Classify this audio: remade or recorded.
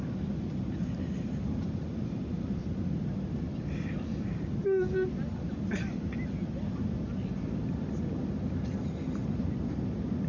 recorded